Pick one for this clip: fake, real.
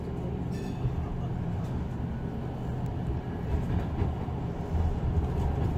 real